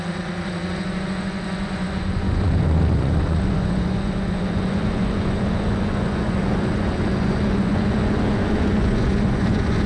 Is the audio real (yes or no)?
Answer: no